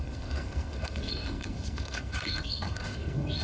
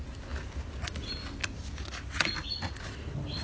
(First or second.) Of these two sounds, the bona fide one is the second